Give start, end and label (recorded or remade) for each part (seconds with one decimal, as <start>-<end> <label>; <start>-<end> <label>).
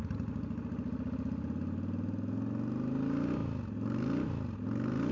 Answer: 0.0-5.1 recorded